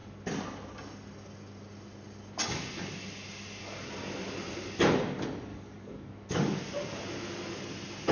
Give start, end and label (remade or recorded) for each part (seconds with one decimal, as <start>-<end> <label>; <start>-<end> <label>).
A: 0.0-5.5 recorded; 5.5-6.6 remade; 6.6-8.1 recorded